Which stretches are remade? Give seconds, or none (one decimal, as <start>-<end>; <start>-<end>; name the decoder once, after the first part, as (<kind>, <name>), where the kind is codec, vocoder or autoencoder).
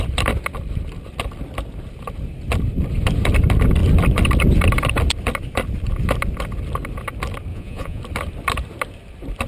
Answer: 7.5-8.0 (vocoder, Vocos)